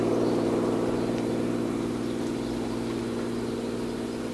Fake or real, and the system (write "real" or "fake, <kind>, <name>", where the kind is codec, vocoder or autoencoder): real